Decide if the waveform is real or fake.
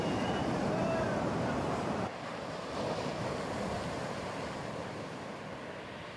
fake